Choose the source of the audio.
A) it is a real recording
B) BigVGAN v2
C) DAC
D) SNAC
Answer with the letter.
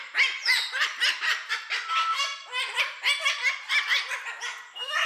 A